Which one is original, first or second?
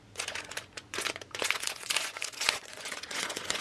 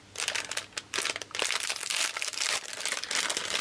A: second